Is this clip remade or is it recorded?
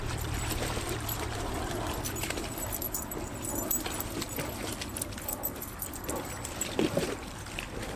recorded